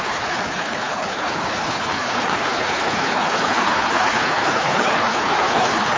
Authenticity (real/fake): fake